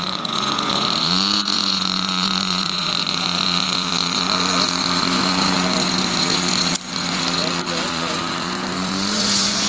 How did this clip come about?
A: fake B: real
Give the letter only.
A